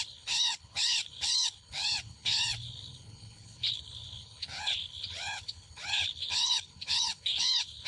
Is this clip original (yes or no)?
no